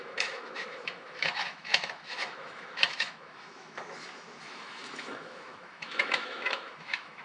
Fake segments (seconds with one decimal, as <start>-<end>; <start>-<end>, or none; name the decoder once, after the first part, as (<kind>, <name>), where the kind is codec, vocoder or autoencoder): 0.0-7.2 (autoencoder, DAC-VAE)